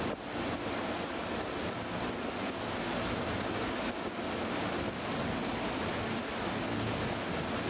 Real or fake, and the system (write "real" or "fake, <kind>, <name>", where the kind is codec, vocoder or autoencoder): real